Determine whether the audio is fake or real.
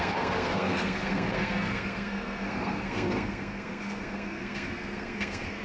fake